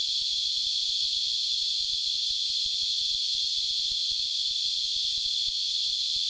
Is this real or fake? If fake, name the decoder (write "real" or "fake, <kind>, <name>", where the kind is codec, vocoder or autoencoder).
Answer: real